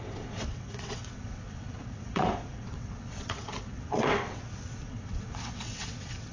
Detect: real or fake fake